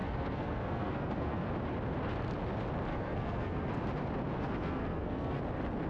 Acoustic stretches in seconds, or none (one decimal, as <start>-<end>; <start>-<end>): 1.5-2.9; 3.8-4.4; 5.4-5.9